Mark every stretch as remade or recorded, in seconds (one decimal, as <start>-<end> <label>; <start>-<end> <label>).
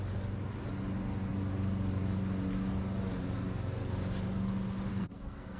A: 0.0-4.9 recorded; 4.9-5.6 remade